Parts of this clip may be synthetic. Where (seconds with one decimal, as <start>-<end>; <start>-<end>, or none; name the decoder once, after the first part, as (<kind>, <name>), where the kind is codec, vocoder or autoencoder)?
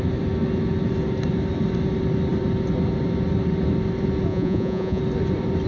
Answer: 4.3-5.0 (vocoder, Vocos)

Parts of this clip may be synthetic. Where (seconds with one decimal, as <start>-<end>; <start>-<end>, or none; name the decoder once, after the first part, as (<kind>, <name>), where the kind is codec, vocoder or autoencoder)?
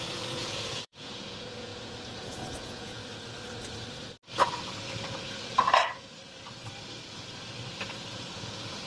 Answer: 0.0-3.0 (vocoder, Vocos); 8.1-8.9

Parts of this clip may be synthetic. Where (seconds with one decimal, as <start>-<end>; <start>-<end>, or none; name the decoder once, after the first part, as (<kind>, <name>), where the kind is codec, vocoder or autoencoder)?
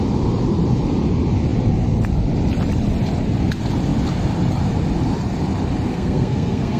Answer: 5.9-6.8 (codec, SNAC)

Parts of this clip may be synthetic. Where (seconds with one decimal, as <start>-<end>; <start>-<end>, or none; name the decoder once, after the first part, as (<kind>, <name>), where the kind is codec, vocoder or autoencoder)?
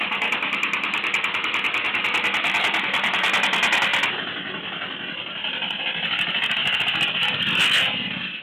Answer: none